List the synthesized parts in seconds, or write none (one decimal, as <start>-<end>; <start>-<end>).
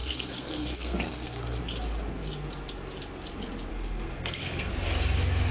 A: 0.0-1.6; 3.7-4.7